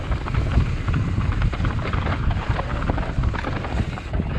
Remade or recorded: recorded